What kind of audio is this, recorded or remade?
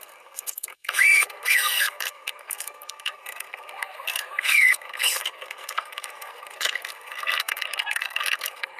remade